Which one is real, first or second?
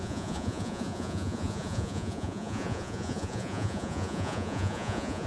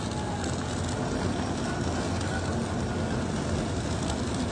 second